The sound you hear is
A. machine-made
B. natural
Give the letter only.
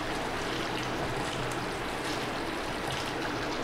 B